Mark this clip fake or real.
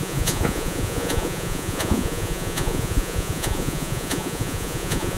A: fake